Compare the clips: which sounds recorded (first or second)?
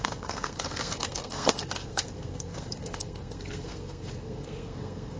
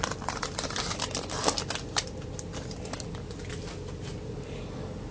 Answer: second